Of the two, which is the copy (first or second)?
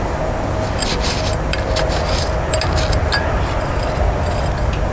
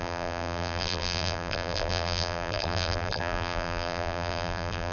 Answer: second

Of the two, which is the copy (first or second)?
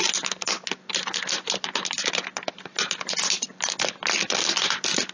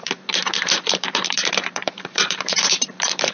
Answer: second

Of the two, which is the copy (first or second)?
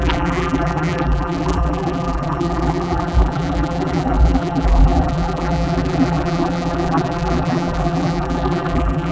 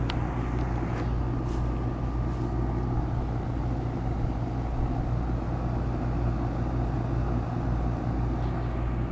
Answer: first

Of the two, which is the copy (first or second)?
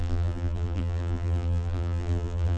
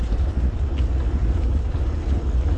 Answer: first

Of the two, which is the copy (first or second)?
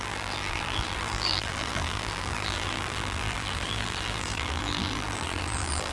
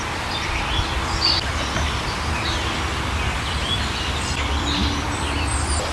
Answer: first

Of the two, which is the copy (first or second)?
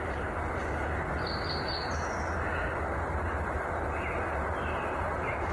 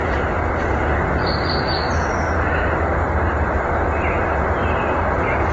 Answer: second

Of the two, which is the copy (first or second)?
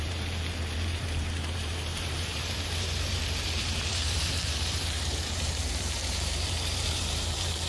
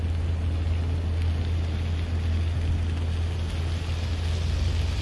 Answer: first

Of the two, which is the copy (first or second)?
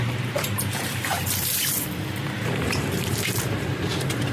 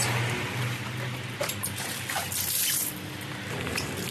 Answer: first